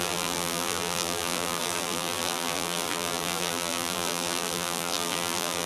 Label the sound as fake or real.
fake